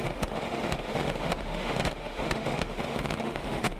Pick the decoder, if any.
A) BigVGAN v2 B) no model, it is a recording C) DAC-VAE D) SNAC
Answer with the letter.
C